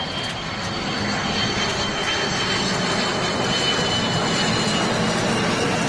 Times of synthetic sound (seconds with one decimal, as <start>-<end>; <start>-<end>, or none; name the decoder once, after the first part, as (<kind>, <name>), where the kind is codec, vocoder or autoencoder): none